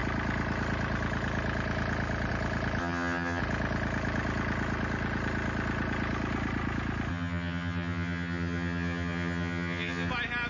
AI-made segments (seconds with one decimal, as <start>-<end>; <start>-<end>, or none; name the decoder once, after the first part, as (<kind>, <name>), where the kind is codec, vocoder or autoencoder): 2.8-3.4 (vocoder, HiFi-GAN); 7.1-10.1